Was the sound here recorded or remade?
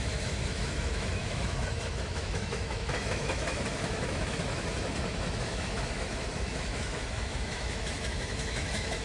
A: remade